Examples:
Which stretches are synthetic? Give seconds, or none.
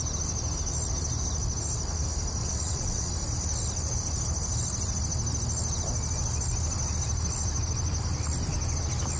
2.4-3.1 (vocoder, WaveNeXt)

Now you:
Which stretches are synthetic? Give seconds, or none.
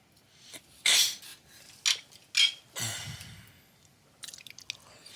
none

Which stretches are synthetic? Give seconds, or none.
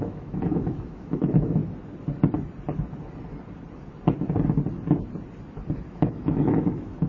0.0-1.6 (autoencoder, DAC-VAE); 5.9-7.1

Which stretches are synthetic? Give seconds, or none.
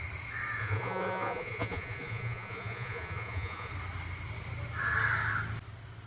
0.6-3.7 (vocoder, Vocos)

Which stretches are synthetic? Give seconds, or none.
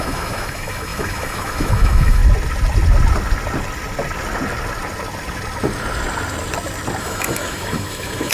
0.0-2.2 (autoencoder, DAC-VAE); 7.0-8.3